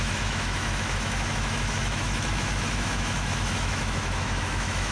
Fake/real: fake